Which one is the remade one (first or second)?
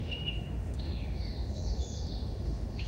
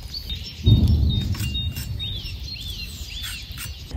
first